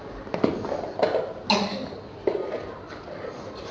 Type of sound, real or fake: real